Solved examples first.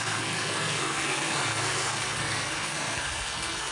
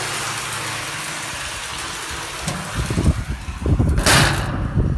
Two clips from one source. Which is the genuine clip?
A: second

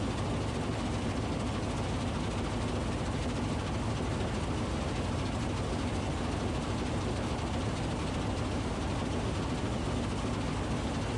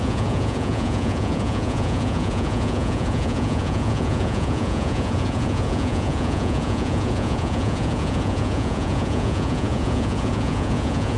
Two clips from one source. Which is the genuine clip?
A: first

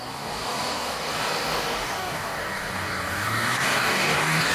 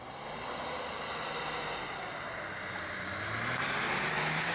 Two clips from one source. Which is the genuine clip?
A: second